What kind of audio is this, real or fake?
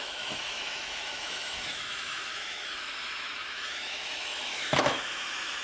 fake